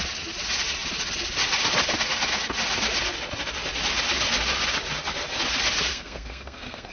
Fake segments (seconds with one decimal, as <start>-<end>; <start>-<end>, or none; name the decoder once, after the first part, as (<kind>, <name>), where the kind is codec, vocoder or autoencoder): 5.9-6.9 (codec, SNAC)